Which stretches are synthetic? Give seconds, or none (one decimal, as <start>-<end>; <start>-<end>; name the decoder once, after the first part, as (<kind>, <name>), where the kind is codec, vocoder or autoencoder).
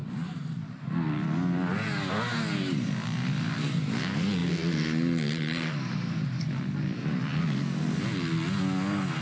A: none